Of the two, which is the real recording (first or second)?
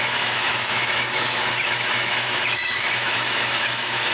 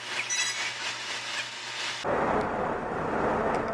second